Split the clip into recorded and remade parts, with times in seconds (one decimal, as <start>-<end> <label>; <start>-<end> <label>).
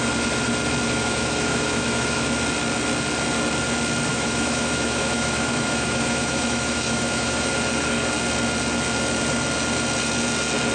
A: 0.0-1.0 recorded; 1.0-2.2 remade; 2.2-4.1 recorded; 4.1-7.5 remade; 7.5-10.7 recorded